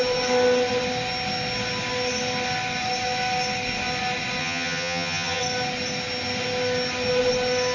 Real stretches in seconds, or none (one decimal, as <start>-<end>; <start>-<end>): 0.0-4.4; 5.4-7.7